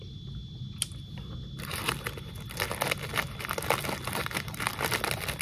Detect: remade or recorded recorded